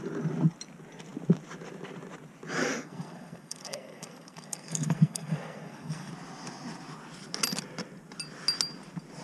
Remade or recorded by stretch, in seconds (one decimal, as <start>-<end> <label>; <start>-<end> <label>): 0.0-2.6 recorded; 2.6-6.1 remade; 6.1-9.2 recorded